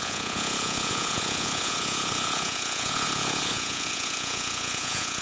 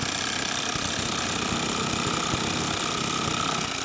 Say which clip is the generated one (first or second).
first